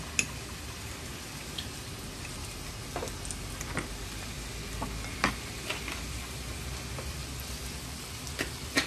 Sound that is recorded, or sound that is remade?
recorded